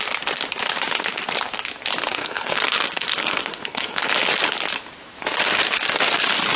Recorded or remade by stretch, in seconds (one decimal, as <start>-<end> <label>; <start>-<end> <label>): 0.0-2.2 recorded; 2.2-4.0 remade; 4.0-6.6 recorded